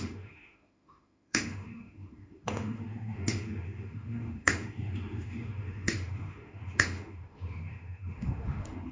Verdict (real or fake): fake